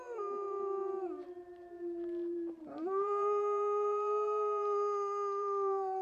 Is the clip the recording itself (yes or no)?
no